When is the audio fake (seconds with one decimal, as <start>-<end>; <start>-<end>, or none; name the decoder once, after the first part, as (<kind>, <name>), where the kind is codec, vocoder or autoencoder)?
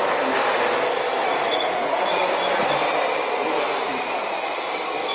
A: 1.3-2.2 (vocoder, Vocos)